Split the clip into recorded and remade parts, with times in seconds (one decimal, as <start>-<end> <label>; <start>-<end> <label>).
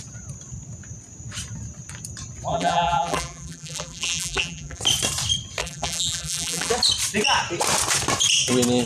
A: 0.0-2.5 recorded; 2.5-4.8 remade; 4.8-5.6 recorded; 5.6-6.7 remade; 6.7-8.9 recorded